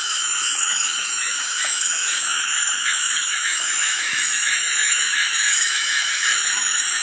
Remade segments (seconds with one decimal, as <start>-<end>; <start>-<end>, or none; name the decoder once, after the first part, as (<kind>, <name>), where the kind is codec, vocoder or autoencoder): 0.0-7.0 (autoencoder, DAC-VAE)